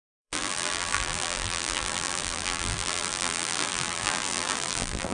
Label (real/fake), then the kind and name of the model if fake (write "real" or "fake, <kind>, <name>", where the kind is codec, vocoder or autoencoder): fake, vocoder, BigVGAN v2